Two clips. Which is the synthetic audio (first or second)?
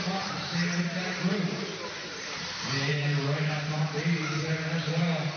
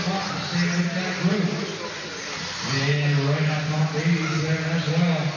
first